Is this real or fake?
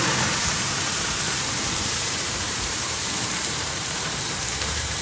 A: fake